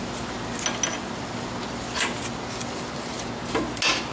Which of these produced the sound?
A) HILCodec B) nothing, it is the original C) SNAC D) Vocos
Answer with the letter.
B